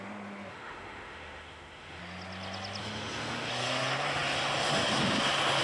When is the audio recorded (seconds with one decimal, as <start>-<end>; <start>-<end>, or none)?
0.0-0.5; 2.0-2.8; 3.5-5.6